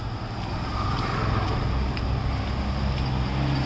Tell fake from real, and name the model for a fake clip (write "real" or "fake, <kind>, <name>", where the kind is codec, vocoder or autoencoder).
real